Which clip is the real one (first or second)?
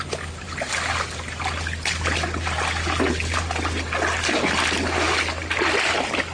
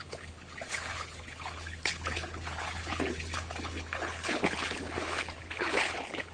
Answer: first